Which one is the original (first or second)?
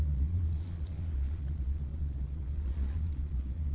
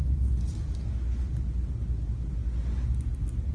second